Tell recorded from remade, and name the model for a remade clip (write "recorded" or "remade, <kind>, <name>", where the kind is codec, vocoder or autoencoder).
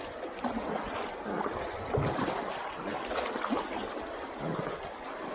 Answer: recorded